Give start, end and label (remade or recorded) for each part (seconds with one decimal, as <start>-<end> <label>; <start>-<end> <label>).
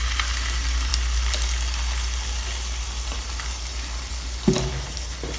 0.0-5.4 recorded